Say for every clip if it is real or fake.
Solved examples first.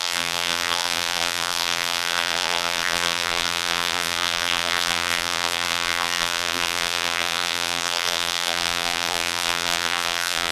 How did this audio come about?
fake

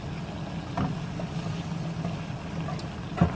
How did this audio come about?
real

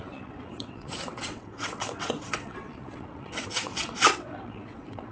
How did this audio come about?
fake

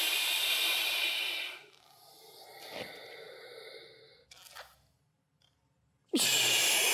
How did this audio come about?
real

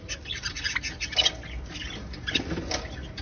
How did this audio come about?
real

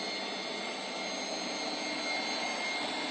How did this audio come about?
real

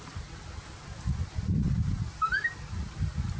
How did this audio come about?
real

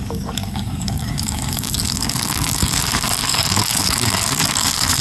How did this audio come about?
fake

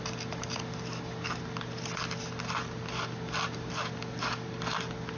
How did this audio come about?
real